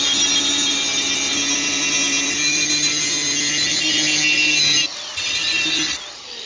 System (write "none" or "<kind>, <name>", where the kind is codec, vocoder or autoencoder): none